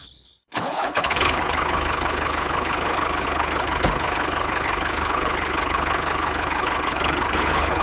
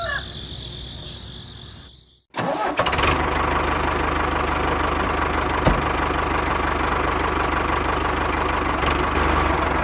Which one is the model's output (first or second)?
first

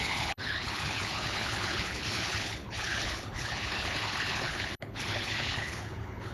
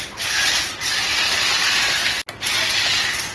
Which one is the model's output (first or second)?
first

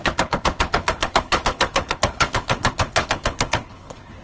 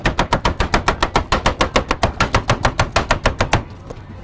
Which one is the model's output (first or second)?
first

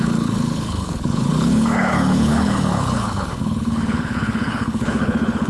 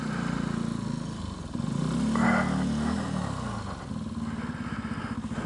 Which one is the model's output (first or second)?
first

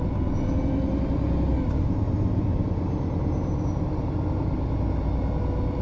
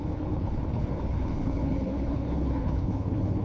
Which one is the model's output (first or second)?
second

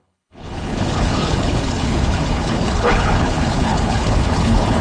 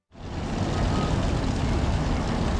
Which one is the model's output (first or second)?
first